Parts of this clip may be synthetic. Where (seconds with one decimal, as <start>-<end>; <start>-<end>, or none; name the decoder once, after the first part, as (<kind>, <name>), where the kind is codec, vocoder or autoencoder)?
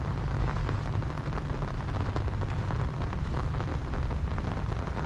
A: 0.0-0.6 (autoencoder, DAC-VAE); 3.2-3.7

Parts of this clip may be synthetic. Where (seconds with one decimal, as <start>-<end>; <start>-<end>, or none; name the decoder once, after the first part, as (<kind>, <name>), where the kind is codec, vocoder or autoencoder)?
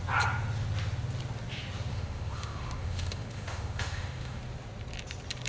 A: 1.9-4.4 (autoencoder, DAC-VAE)